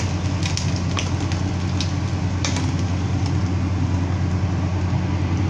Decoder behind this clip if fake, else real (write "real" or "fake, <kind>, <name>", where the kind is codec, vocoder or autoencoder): real